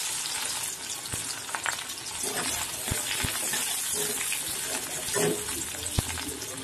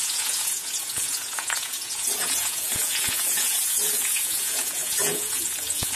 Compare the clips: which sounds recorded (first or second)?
first